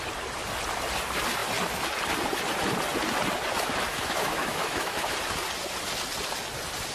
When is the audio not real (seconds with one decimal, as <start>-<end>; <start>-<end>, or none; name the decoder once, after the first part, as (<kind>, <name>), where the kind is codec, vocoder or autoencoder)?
3.9-5.1 (autoencoder, DAC-VAE)